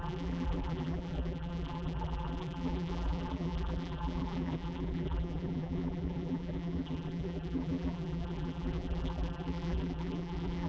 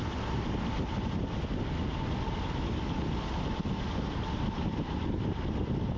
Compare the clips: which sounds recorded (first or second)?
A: second